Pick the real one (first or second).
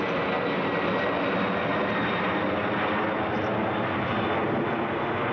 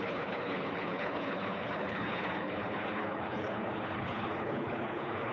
first